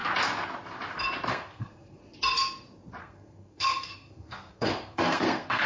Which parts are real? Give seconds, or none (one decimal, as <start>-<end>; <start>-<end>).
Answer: 0.0-1.3; 2.0-3.0